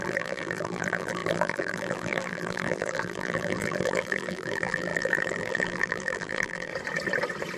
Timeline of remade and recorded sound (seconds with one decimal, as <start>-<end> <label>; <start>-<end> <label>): 0.0-6.7 remade; 6.7-7.6 recorded